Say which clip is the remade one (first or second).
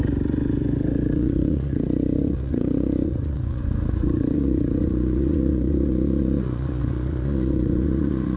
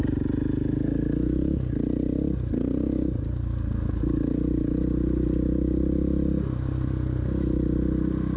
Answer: first